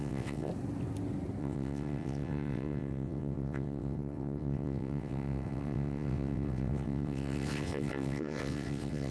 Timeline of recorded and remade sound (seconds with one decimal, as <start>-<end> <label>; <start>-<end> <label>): 0.0-0.5 remade; 0.5-1.4 recorded; 1.4-9.1 remade